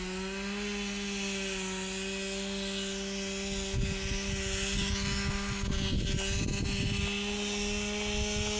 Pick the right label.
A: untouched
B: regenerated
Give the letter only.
A